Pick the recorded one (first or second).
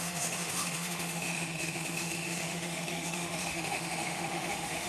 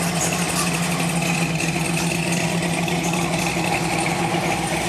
second